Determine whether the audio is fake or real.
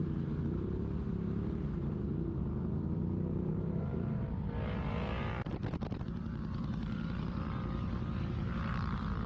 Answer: fake